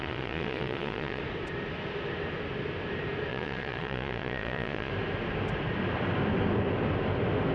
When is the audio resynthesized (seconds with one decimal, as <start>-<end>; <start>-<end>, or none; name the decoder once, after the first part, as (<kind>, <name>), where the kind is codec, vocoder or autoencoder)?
0.0-1.2 (vocoder, Vocos); 3.3-4.9